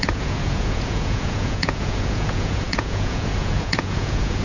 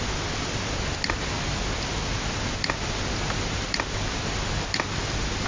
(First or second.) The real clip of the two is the second